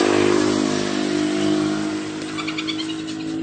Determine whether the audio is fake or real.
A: real